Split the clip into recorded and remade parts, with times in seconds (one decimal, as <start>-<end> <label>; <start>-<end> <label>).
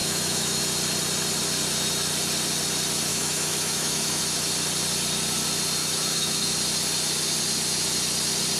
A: 0.0-0.6 remade; 0.6-3.1 recorded; 3.1-4.2 remade; 4.2-5.8 recorded; 5.8-6.5 remade; 6.5-8.6 recorded